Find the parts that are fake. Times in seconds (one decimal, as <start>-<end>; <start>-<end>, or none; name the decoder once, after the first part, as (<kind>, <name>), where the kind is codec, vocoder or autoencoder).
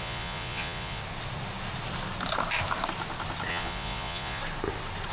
0.0-1.0 (vocoder, Vocos); 3.5-4.4